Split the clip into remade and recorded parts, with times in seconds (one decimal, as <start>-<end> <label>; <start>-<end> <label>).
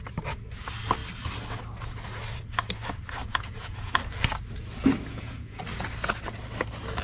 0.0-3.2 recorded; 3.2-4.0 remade; 4.0-5.1 recorded; 5.1-5.6 remade; 5.6-7.0 recorded